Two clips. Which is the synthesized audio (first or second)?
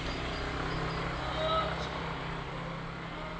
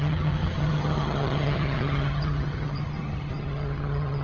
second